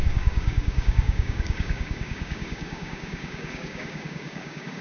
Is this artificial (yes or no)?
yes